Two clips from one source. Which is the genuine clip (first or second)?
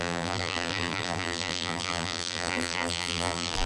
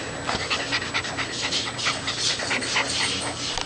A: second